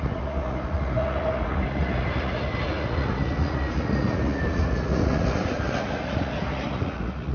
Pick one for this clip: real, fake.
fake